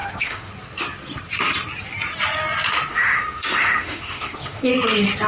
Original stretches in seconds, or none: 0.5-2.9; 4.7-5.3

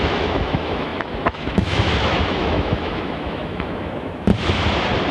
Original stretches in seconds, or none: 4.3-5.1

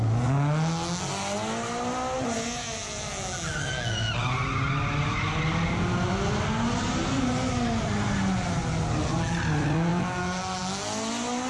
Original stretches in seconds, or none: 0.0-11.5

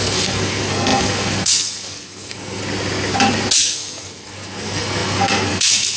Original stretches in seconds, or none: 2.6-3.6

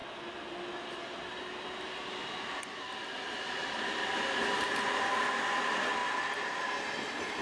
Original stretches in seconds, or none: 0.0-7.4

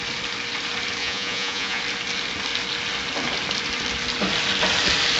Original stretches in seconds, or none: 0.0-1.0; 1.8-5.2

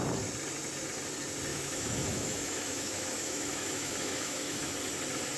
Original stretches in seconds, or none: 0.0-1.5; 4.7-5.4